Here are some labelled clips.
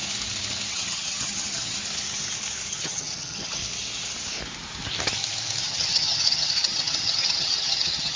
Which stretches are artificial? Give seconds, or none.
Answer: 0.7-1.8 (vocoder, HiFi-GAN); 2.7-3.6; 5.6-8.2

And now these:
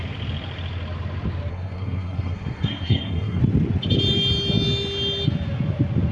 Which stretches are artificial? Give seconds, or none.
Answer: 1.5-3.4 (codec, SNAC)

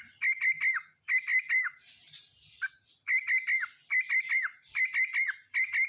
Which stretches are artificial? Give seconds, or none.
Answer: none

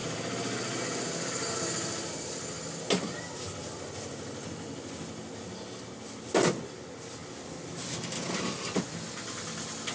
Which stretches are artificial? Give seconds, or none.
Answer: none

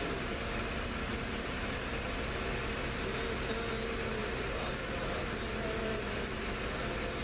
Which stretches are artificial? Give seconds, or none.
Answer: 1.1-1.9 (vocoder, BigVGAN v2); 4.2-4.7; 5.2-6.6

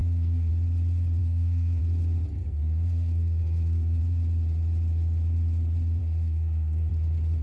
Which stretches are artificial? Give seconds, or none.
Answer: 0.0-0.5 (codec, SNAC); 1.2-1.8; 2.4-4.0; 6.0-6.9

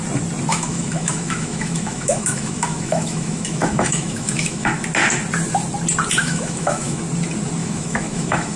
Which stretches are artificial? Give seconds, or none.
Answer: 0.5-4.8 (autoencoder, DAC-VAE); 6.2-7.0; 7.6-8.6